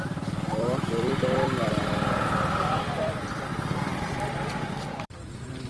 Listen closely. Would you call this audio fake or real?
fake